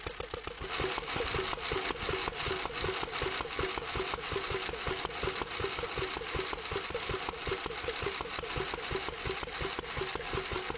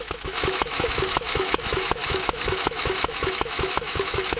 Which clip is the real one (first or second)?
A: first